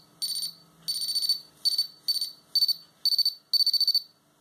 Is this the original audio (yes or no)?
yes